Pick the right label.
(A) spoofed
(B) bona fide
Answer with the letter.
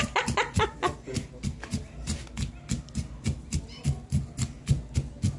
B